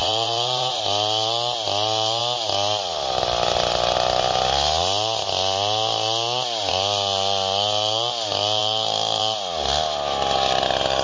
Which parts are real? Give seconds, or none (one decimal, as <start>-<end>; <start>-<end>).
0.8-11.0